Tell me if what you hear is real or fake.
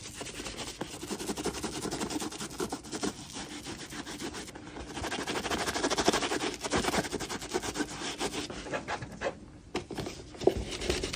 real